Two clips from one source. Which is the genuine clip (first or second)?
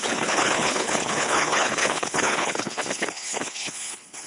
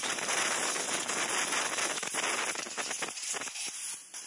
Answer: second